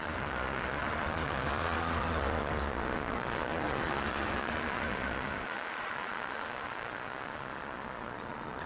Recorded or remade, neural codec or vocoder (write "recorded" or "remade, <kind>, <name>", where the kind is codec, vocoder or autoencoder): remade, vocoder, Vocos